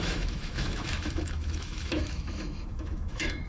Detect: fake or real fake